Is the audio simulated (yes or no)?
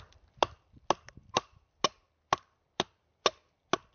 no